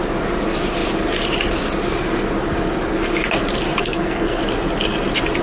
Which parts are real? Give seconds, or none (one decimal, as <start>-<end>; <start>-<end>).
0.0-3.8; 4.4-5.4